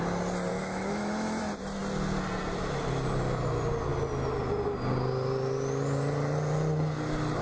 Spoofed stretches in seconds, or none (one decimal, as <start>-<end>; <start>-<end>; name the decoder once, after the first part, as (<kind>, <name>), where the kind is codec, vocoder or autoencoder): 0.5-1.4 (autoencoder, DAC-VAE)